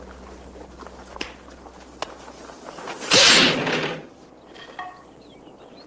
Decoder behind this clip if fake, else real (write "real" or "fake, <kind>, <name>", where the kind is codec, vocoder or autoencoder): real